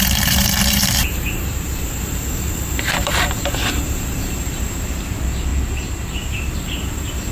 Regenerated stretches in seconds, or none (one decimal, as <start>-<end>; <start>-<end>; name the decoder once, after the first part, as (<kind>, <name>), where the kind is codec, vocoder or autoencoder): 0.0-7.3 (vocoder, BigVGAN v2)